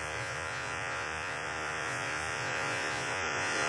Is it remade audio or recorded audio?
remade